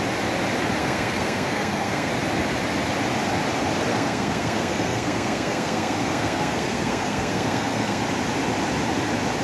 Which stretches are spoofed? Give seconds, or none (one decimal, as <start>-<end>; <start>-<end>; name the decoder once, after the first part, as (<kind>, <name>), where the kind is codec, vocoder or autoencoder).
0.8-2.1 (codec, SNAC); 3.9-8.0